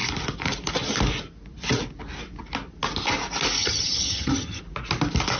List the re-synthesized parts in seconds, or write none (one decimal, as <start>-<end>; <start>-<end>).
3.6-4.6